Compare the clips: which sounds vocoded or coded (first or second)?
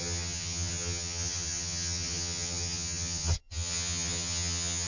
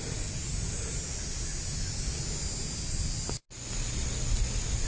first